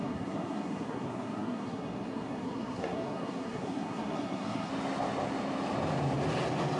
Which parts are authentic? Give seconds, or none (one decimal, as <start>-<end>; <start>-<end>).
4.7-6.8